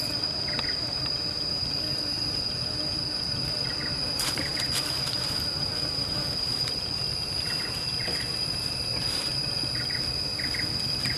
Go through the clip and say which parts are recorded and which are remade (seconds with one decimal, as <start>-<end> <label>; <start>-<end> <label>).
0.0-10.3 remade; 10.3-11.2 recorded